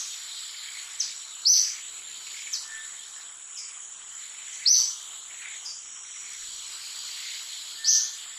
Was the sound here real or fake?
real